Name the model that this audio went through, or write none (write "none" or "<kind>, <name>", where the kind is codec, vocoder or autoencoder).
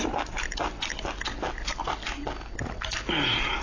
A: none